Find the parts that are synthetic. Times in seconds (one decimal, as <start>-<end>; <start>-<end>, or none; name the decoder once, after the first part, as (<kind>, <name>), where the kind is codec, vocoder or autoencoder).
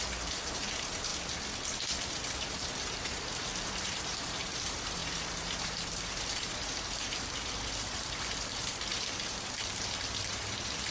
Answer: 0.0-1.1 (vocoder, BigVGAN v2); 2.1-10.9